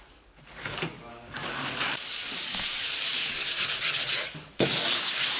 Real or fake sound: fake